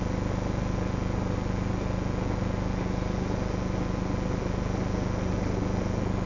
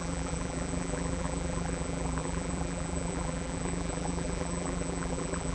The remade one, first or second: second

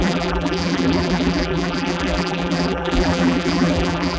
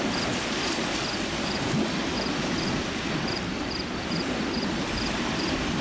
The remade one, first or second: first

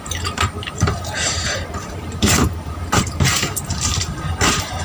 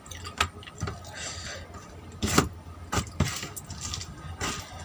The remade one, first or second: first